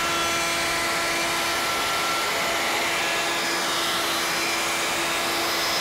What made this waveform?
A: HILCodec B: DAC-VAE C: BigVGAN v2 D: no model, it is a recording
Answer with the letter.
D